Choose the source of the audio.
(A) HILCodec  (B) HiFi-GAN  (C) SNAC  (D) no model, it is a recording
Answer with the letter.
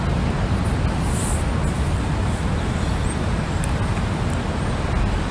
D